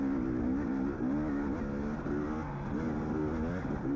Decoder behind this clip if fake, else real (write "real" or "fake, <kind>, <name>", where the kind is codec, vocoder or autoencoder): real